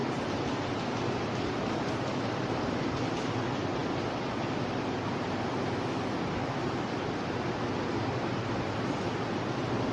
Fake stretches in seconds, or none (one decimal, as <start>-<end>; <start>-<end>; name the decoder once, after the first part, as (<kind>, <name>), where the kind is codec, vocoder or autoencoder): none